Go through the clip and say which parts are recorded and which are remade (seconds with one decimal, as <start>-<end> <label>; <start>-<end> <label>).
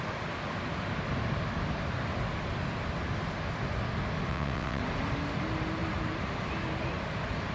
0.0-4.3 recorded; 4.3-4.8 remade; 4.8-7.5 recorded